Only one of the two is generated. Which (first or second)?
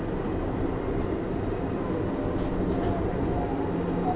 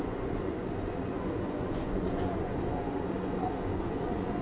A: second